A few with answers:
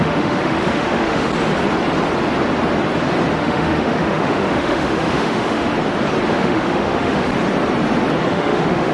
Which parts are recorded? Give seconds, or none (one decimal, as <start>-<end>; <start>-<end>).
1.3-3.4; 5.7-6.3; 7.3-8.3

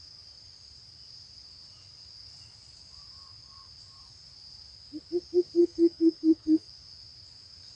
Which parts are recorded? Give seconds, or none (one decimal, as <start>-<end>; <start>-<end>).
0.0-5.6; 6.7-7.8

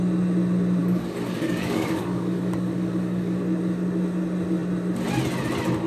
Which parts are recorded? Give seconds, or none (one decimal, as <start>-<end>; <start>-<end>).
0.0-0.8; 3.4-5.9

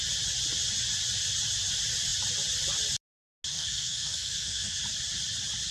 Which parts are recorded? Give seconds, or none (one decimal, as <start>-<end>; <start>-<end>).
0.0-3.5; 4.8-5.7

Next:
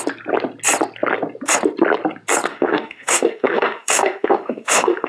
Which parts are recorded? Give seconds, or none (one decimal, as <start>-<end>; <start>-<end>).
0.0-2.5

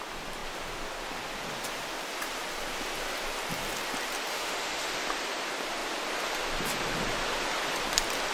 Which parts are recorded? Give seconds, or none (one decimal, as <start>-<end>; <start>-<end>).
0.0-4.3; 4.9-8.3

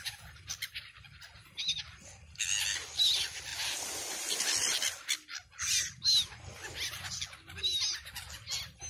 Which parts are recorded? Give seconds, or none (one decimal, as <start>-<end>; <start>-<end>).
0.0-8.9